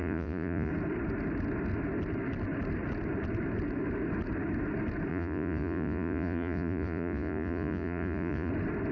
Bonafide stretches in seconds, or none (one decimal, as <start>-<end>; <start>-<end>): 0.7-5.1; 8.5-8.9